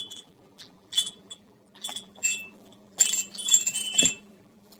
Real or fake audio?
fake